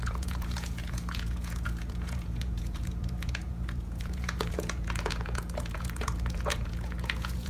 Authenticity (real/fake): fake